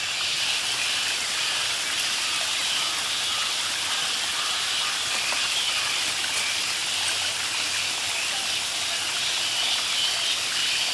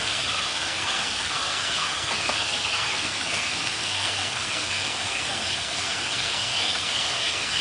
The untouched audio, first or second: first